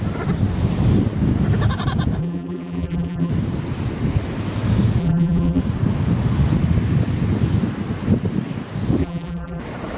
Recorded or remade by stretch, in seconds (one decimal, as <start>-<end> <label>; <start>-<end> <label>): 0.0-2.2 recorded; 2.2-3.3 remade; 3.3-5.0 recorded; 5.0-5.6 remade; 5.6-9.0 recorded; 9.0-9.6 remade; 9.6-10.0 recorded

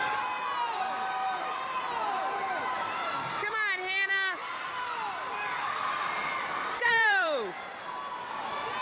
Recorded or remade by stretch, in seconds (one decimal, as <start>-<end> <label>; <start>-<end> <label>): 0.0-5.3 recorded; 5.3-7.7 remade; 7.7-8.8 recorded

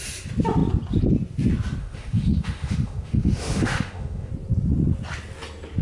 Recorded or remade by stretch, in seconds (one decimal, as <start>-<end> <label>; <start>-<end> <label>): 0.0-1.8 recorded; 1.8-4.3 remade; 4.3-5.8 recorded

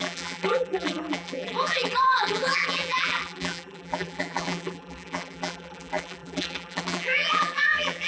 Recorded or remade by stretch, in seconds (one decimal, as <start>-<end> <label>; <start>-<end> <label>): 0.0-8.1 remade

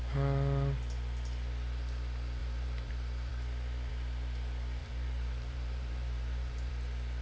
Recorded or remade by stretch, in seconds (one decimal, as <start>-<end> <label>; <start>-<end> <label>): 0.0-2.4 recorded; 2.4-2.9 remade; 2.9-4.8 recorded; 4.8-6.7 remade; 6.7-7.2 recorded

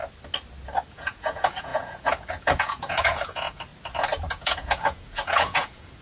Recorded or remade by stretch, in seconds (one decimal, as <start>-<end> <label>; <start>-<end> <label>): 0.0-0.9 recorded; 0.9-3.7 remade; 3.7-4.3 recorded; 4.3-6.0 remade

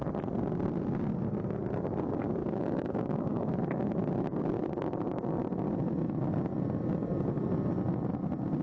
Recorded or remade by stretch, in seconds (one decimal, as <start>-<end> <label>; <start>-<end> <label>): 0.0-2.4 recorded; 2.4-3.5 remade; 3.5-8.6 recorded

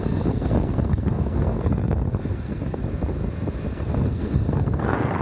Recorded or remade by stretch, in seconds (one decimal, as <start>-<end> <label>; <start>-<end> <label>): 0.0-2.8 remade; 2.8-3.7 recorded; 3.7-5.2 remade